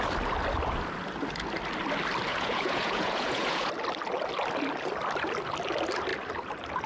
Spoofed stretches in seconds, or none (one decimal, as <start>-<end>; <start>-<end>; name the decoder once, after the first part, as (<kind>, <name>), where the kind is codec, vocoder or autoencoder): 2.3-3.7 (vocoder, Vocos)